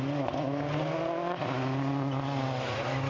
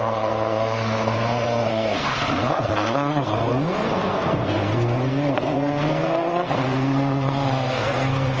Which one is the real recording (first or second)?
first